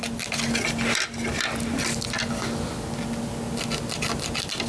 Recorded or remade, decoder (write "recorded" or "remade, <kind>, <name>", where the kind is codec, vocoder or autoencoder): recorded